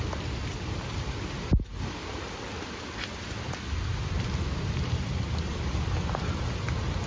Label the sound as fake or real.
real